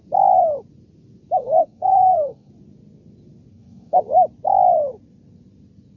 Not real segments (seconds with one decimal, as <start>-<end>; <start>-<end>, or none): 1.4-2.5; 3.5-4.0